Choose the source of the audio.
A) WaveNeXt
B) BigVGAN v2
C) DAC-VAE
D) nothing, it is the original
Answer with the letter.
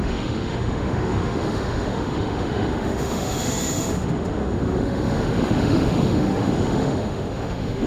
C